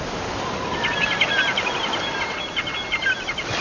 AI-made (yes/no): no